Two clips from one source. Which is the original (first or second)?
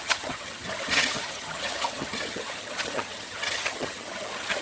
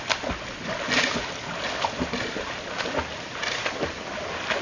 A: second